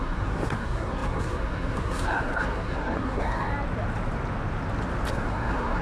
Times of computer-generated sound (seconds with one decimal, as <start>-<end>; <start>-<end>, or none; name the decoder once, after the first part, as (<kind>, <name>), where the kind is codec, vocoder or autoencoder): 0.0-3.5 (codec, SNAC); 5.1-5.8